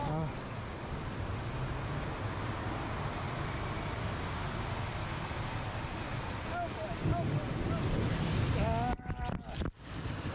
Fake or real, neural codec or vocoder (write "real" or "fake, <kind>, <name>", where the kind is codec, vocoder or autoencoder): real